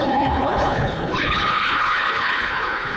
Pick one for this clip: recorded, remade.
remade